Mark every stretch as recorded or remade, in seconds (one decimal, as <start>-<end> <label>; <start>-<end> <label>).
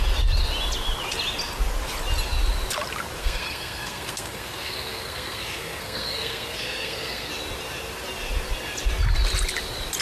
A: 0.0-3.2 recorded; 3.2-7.3 remade; 7.3-10.0 recorded